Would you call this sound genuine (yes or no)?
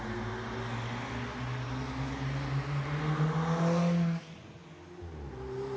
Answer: yes